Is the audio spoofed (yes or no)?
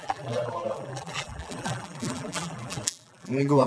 yes